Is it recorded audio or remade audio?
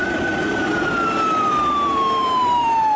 remade